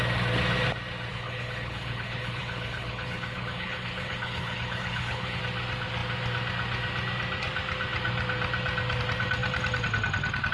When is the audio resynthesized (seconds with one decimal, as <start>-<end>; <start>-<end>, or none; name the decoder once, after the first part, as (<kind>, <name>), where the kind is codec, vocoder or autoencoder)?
1.1-5.4 (codec, HILCodec)